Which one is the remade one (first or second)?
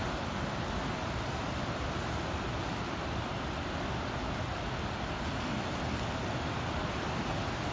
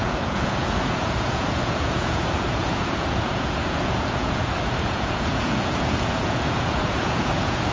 second